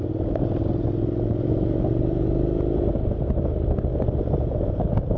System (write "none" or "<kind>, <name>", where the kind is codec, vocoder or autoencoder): none